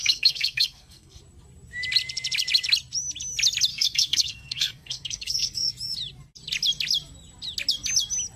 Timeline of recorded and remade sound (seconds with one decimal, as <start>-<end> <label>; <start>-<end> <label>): 0.0-1.2 remade; 1.2-3.7 recorded; 3.7-5.7 remade; 5.7-8.4 recorded